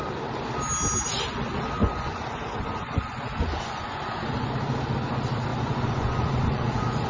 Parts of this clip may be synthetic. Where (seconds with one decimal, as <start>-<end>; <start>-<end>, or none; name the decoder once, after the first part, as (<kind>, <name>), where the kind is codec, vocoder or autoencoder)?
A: 1.8-4.5 (vocoder, Vocos); 5.5-7.1